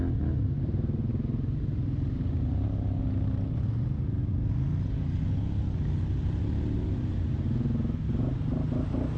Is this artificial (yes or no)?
no